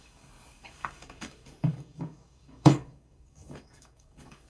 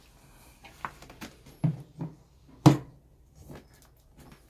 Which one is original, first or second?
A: second